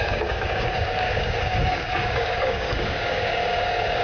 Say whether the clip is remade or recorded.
remade